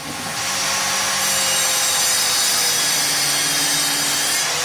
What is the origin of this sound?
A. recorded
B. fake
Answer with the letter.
A